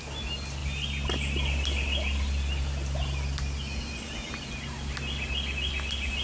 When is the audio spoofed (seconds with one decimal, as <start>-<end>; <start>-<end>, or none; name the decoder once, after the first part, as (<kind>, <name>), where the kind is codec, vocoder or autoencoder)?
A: none